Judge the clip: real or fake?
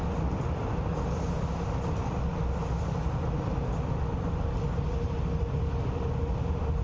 real